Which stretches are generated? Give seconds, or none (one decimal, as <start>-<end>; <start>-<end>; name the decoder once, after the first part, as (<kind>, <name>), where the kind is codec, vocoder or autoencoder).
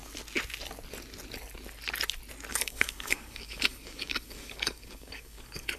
2.5-5.8 (codec, DAC)